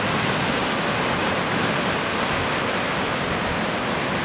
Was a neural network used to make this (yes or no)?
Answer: no